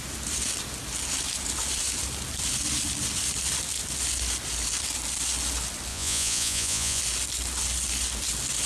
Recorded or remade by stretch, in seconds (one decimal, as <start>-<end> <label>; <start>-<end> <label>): 0.0-5.9 recorded; 5.9-7.0 remade; 7.0-8.7 recorded

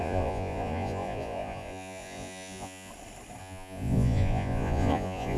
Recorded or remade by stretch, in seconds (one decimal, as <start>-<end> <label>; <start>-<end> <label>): 0.0-2.9 remade; 2.9-3.4 recorded; 3.4-5.4 remade

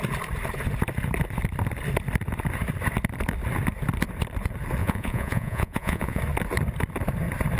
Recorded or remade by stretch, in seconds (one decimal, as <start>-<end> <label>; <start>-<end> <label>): 0.0-4.8 recorded; 4.8-6.2 remade; 6.2-7.6 recorded